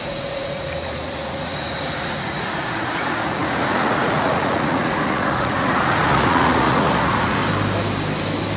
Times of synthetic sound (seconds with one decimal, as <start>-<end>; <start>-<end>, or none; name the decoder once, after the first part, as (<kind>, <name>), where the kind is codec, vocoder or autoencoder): 0.0-7.4 (vocoder, Vocos)